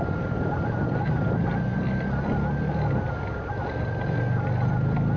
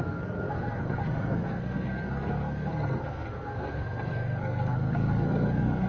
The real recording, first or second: first